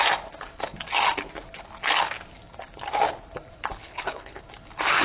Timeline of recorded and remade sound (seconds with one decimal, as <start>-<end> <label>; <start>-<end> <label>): 0.0-3.8 recorded; 3.8-4.4 remade; 4.4-5.0 recorded

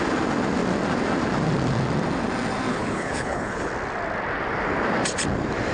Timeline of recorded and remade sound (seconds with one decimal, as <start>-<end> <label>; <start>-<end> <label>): 0.0-2.7 recorded; 2.7-3.7 remade; 3.7-5.7 recorded

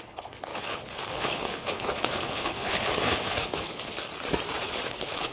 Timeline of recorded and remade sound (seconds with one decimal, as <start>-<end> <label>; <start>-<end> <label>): 0.0-4.1 remade; 4.1-4.6 recorded; 4.6-5.3 remade

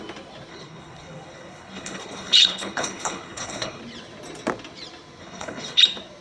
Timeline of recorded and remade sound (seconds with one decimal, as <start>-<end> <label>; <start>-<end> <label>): 0.0-0.5 recorded; 0.5-3.8 remade; 3.8-5.2 recorded; 5.2-5.8 remade; 5.8-6.2 recorded

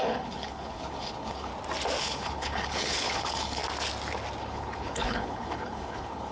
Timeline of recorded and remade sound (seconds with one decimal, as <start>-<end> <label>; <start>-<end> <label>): 0.0-1.5 remade; 1.5-2.0 recorded; 2.0-3.6 remade; 3.6-4.4 recorded; 4.4-6.3 remade

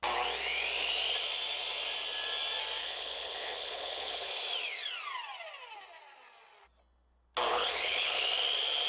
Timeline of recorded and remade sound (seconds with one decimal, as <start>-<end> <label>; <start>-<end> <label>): 0.0-2.8 recorded; 2.8-4.3 remade; 4.3-7.5 recorded; 7.5-8.2 remade; 8.2-8.9 recorded

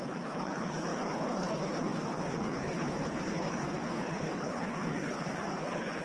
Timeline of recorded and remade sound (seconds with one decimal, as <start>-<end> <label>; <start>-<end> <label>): 0.0-6.0 remade